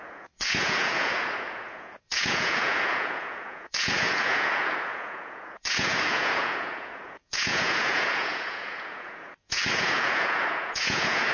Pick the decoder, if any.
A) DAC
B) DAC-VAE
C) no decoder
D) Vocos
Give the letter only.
D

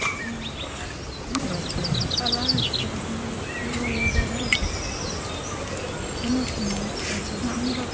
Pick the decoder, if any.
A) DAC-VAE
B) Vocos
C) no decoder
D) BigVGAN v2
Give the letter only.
C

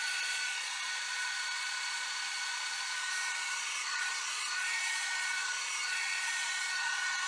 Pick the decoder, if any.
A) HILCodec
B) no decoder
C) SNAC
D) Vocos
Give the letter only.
D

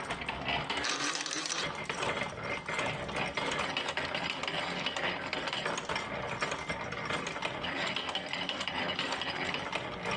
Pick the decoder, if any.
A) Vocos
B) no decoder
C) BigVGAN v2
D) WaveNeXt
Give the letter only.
B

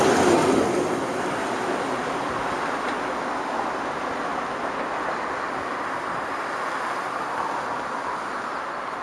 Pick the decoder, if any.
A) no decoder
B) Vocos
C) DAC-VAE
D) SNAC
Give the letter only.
A